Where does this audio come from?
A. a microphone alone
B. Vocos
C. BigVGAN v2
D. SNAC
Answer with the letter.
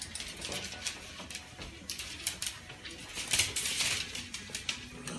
A